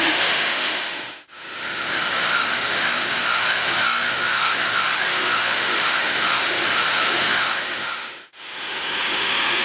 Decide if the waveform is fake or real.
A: fake